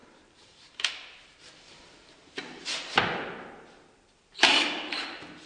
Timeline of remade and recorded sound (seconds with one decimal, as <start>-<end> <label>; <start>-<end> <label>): 0.0-2.2 remade; 2.2-4.2 recorded; 4.2-5.5 remade